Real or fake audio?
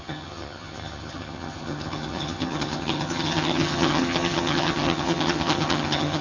fake